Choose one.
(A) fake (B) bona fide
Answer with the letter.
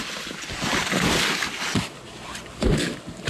B